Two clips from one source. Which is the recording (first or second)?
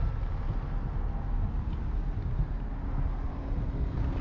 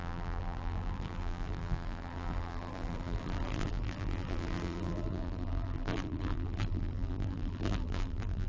first